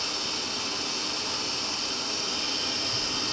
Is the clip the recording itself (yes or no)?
yes